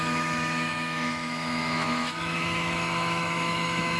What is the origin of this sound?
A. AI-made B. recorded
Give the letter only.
A